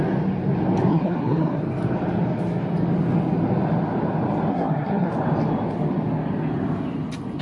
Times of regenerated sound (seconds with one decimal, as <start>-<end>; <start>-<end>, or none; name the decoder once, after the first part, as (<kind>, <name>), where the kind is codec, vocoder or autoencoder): 0.9-1.6 (codec, SNAC); 4.5-5.1